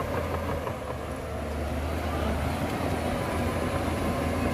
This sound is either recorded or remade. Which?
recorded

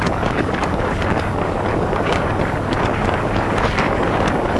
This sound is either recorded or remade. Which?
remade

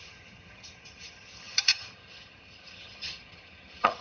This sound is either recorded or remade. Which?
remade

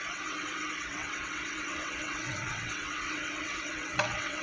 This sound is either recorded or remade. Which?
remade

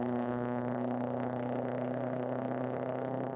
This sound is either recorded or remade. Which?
remade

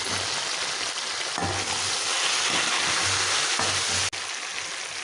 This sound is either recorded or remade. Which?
recorded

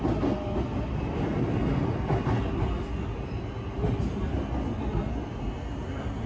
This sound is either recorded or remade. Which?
recorded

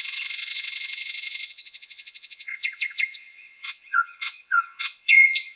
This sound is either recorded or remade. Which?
remade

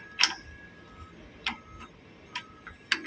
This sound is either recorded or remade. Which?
recorded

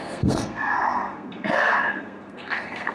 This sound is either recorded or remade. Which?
remade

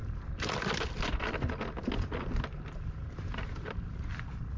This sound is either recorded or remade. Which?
recorded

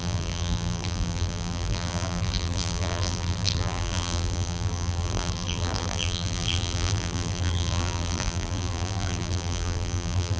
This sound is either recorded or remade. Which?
remade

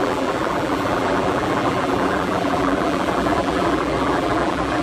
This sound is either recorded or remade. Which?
remade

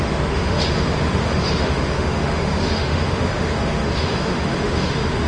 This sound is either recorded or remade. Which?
remade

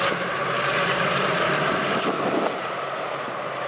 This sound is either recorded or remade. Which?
remade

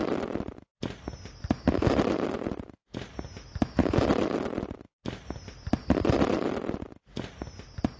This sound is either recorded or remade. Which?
recorded